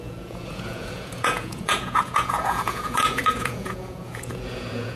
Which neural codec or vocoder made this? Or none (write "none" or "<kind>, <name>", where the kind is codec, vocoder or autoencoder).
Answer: vocoder, Vocos